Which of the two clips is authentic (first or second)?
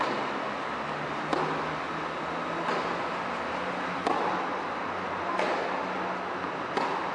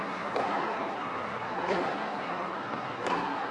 first